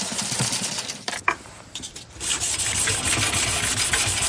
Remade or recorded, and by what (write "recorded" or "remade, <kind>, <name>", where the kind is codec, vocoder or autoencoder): recorded